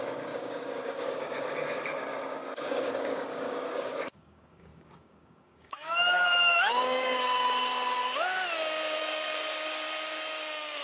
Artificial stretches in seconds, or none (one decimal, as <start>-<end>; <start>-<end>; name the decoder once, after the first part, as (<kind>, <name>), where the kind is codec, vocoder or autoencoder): 0.0-8.0 (codec, DAC); 9.0-10.8